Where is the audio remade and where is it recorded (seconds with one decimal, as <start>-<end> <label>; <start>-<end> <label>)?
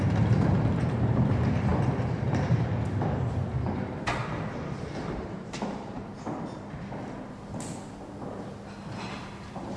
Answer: 0.0-1.7 remade; 1.7-2.3 recorded; 2.3-2.7 remade; 2.7-3.7 recorded; 3.7-6.1 remade; 6.1-9.1 recorded; 9.1-9.8 remade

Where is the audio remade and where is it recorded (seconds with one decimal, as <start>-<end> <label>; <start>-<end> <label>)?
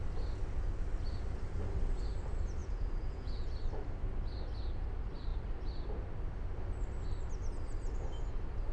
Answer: 0.0-2.6 recorded; 2.6-3.5 remade; 3.5-8.7 recorded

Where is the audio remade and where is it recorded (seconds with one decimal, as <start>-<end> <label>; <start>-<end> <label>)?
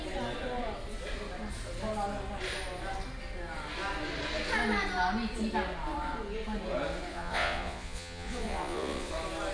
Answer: 0.0-7.1 recorded; 7.1-9.1 remade; 9.1-9.5 recorded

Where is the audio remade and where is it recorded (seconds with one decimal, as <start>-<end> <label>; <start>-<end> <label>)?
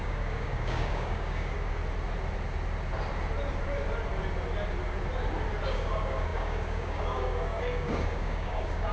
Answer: 0.0-1.8 remade; 1.8-5.7 recorded; 5.7-8.9 remade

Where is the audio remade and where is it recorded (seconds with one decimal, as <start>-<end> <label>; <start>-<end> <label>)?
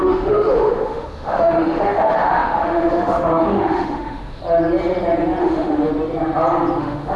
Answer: 0.0-4.4 remade; 4.4-5.4 recorded; 5.4-5.9 remade; 5.9-6.8 recorded; 6.8-7.2 remade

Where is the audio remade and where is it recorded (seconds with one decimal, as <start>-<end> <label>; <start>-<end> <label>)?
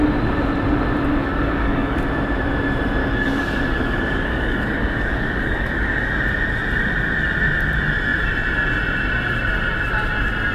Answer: 0.0-1.2 recorded; 1.2-2.0 remade; 2.0-3.0 recorded; 3.0-6.1 remade; 6.1-10.5 recorded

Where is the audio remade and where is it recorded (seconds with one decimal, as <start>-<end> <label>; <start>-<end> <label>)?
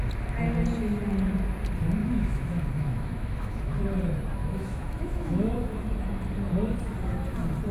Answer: 0.0-2.0 recorded; 2.0-3.8 remade; 3.8-4.4 recorded; 4.4-5.5 remade; 5.5-7.7 recorded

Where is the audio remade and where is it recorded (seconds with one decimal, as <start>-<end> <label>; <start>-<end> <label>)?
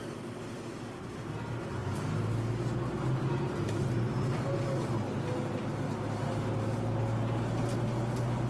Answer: 0.0-8.5 recorded